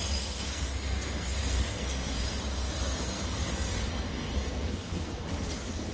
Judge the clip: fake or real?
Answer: fake